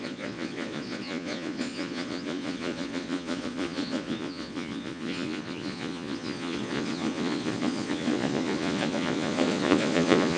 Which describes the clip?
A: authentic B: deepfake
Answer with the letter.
B